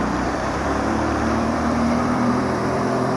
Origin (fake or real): fake